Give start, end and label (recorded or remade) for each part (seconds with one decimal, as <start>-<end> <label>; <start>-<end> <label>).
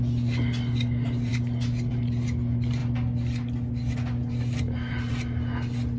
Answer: 0.0-6.0 recorded